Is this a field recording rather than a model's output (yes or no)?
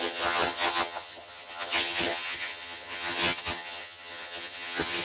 no